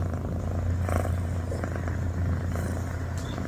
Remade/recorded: recorded